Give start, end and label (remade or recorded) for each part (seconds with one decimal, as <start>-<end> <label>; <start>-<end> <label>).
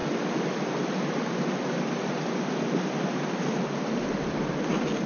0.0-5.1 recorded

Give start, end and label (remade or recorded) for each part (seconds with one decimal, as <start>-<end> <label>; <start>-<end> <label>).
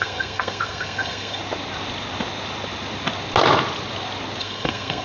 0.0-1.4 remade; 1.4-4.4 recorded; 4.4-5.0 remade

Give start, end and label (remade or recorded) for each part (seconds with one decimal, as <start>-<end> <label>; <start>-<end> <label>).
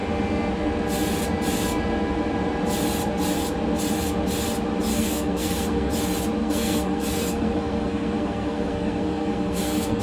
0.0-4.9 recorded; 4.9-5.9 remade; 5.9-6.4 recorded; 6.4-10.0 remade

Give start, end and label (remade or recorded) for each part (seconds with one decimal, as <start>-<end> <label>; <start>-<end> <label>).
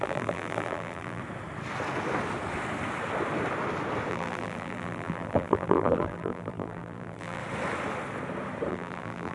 0.0-1.2 remade; 1.2-4.1 recorded; 4.1-7.4 remade; 7.4-8.7 recorded; 8.7-9.3 remade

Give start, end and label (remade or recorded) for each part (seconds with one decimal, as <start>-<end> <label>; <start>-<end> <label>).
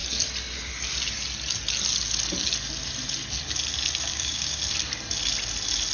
0.0-4.1 recorded; 4.1-4.6 remade; 4.6-5.9 recorded